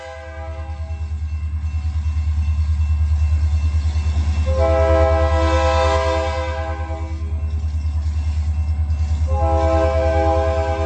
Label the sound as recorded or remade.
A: recorded